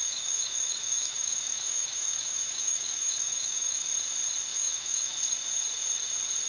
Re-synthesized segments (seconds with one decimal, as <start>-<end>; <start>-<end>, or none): 0.0-3.9; 4.5-5.2